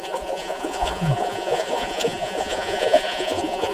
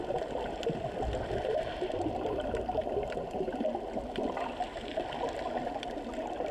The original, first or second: second